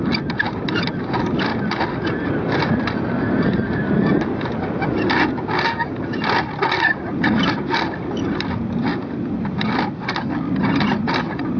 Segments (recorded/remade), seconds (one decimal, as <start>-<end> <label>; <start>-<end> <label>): 0.0-11.6 recorded